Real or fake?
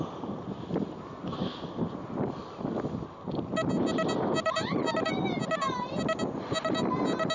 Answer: real